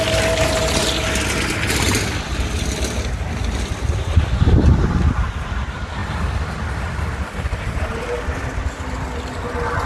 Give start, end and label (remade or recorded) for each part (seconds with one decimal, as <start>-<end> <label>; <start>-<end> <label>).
0.0-9.9 recorded